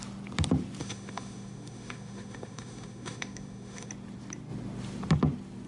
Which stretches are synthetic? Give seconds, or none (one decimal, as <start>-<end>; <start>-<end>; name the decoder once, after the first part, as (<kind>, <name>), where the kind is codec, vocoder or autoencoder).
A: 0.8-3.9 (autoencoder, DAC-VAE)

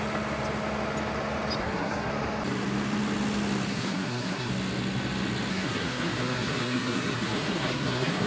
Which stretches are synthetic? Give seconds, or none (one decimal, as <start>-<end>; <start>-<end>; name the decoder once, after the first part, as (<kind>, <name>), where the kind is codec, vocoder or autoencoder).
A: 1.6-2.1 (codec, SNAC); 3.7-4.5; 5.5-8.3

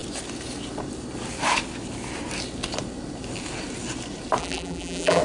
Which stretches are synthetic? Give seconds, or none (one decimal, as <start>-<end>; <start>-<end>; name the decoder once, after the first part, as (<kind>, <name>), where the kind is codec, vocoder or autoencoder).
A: 4.4-5.2 (vocoder, BigVGAN v2)

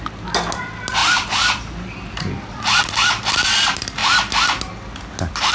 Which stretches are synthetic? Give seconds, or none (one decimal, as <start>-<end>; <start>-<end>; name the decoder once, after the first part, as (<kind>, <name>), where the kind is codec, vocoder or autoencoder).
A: 1.0-2.8 (vocoder, BigVGAN v2)

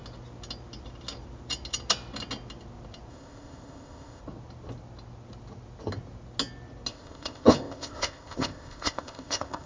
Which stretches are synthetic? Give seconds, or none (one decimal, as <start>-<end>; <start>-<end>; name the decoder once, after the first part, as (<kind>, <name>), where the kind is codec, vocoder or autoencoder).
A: 3.1-4.2 (codec, ZipCodec); 6.9-9.7

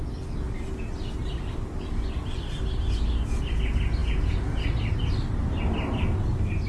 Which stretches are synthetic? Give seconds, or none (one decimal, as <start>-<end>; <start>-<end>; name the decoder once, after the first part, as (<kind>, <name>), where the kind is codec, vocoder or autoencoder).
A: 4.0-4.8 (vocoder, Vocos)